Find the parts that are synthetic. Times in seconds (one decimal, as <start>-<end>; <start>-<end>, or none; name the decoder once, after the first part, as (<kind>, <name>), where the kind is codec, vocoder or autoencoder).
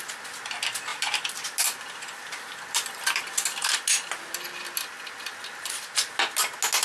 0.9-5.0 (vocoder, BigVGAN v2)